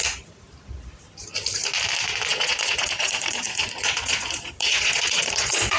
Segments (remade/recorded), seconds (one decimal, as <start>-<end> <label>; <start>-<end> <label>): 0.0-2.3 recorded; 2.3-5.8 remade